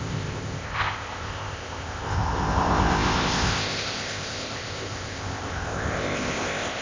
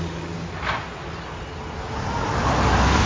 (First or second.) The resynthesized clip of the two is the first